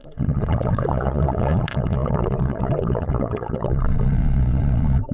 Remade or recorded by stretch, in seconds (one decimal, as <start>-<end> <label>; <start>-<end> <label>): 0.0-5.1 remade